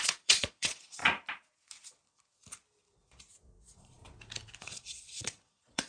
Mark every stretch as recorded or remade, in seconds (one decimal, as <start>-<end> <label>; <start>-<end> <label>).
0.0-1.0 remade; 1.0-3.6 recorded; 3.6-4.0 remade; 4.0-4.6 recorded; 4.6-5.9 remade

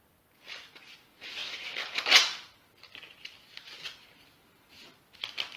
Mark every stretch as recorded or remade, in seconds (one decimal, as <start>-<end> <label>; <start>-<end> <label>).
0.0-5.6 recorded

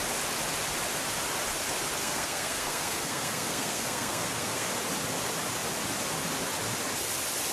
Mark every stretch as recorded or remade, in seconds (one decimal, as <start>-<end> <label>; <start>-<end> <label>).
0.0-2.0 recorded; 2.0-4.7 remade; 4.7-7.5 recorded

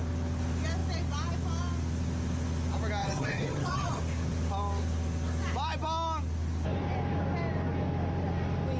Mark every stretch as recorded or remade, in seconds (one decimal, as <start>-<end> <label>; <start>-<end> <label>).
0.0-3.0 recorded; 3.0-4.0 remade; 4.0-8.8 recorded